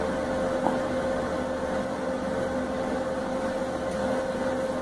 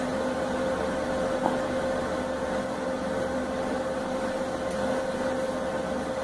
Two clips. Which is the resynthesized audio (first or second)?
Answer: second